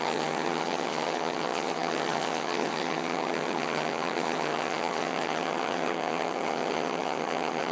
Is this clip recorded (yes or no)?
no